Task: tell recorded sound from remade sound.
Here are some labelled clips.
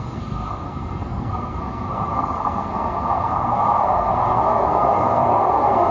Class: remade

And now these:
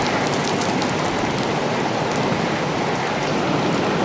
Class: recorded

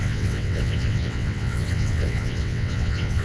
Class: remade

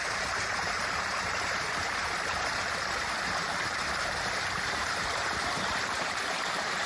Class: remade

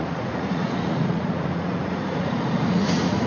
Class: remade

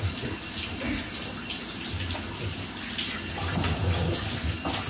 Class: recorded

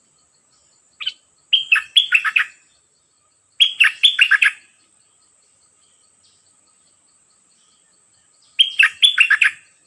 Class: recorded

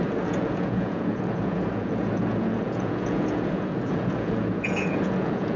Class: remade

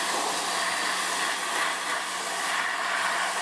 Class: recorded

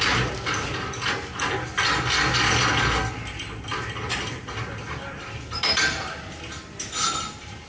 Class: recorded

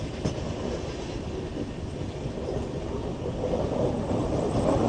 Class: recorded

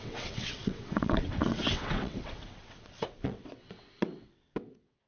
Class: remade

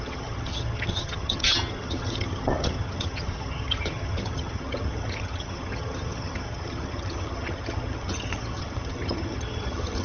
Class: remade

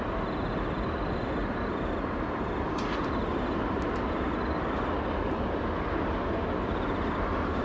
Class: recorded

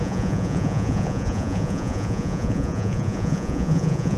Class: remade